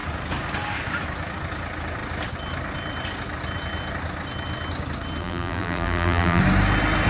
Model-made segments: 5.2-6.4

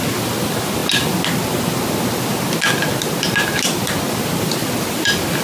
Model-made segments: none